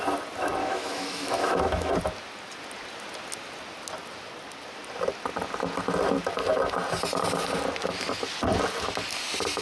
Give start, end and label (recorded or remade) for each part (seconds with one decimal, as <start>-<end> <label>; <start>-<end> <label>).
0.0-0.6 recorded; 0.6-1.9 remade; 1.9-9.6 recorded